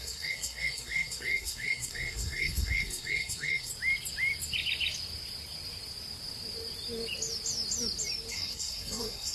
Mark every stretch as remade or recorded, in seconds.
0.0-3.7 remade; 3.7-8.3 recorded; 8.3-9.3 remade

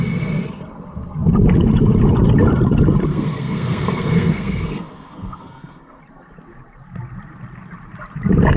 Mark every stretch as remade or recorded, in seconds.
0.0-3.1 recorded; 3.1-6.0 remade; 6.0-8.6 recorded

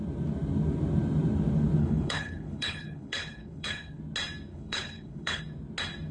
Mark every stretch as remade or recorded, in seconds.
0.0-1.8 recorded; 1.8-4.0 remade; 4.0-4.5 recorded; 4.5-5.4 remade; 5.4-6.1 recorded

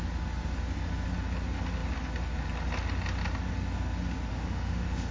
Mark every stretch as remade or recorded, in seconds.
0.0-4.3 recorded; 4.3-5.1 remade

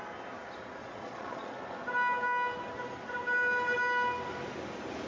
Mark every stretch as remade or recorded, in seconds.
0.0-0.8 recorded; 0.8-1.6 remade; 1.6-5.1 recorded

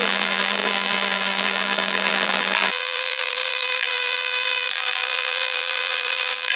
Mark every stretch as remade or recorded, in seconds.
0.0-6.6 remade